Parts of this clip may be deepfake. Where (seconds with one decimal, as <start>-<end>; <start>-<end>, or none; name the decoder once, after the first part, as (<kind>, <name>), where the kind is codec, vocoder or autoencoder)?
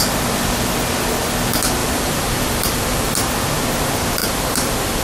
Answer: 1.8-3.1 (vocoder, BigVGAN v2); 4.2-5.0